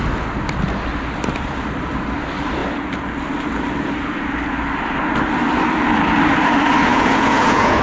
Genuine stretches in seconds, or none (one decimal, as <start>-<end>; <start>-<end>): 0.0-6.9

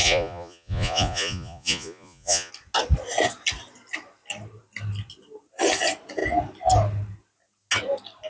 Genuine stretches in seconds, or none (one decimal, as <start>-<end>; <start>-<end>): 2.5-8.3

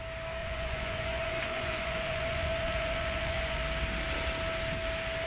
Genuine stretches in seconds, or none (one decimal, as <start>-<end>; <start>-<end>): 0.0-0.4; 3.6-5.3

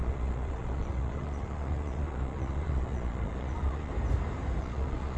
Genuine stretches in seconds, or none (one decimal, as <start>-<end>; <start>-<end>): 3.9-4.6

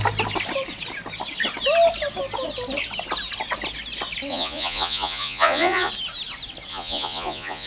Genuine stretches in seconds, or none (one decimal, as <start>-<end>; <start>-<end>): 0.0-4.3; 5.9-6.7

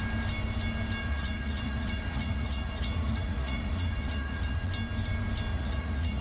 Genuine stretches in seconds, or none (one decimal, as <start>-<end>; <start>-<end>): 0.0-1.0; 4.7-5.5

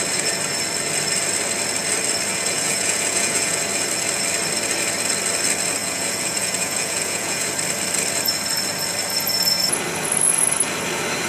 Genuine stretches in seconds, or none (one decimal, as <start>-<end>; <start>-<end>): 0.0-2.3; 3.6-5.8; 7.5-11.3